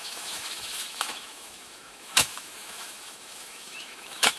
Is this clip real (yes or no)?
no